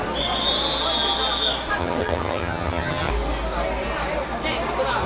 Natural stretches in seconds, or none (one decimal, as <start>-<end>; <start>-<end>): 0.0-1.8; 3.1-5.1